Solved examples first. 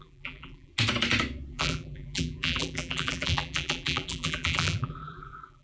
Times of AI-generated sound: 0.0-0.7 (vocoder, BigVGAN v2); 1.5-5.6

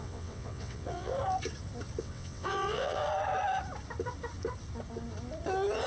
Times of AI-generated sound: 0.0-1.1 (vocoder, WaveNeXt); 2.0-3.0

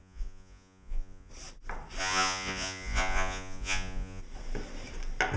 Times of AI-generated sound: 0.0-1.3 (vocoder, Vocos); 2.0-4.2

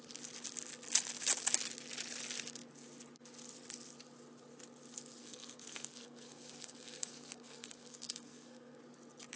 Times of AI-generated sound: 5.2-8.8 (codec, SNAC)